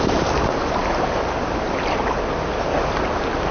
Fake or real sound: real